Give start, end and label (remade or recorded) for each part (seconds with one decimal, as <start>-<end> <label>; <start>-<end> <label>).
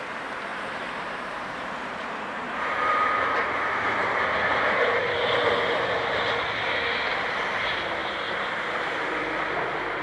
0.0-0.5 recorded; 0.5-4.2 remade; 4.2-10.0 recorded